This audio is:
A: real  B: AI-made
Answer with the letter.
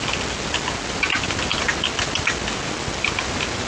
A